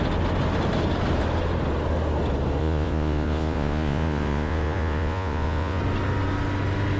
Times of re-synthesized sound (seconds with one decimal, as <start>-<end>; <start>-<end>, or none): 2.6-5.8